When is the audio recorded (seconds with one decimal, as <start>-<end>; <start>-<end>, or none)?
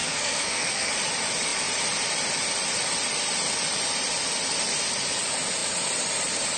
0.9-6.6